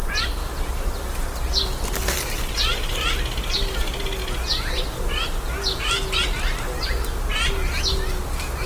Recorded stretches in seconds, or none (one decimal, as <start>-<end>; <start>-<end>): 0.0-8.7